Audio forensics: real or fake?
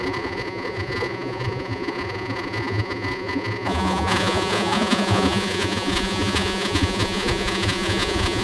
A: fake